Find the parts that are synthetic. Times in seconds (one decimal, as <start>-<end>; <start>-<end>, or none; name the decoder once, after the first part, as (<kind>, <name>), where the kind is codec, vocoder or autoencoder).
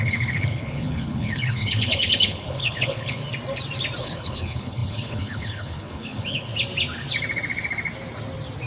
0.0-3.2 (codec, HILCodec); 4.0-6.5